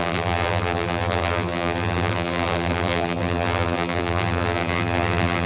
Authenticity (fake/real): fake